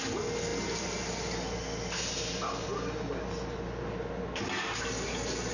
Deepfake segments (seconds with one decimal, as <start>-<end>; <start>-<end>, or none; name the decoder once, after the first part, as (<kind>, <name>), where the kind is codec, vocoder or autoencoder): none